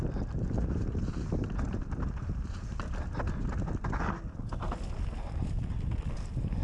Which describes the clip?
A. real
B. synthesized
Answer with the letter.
A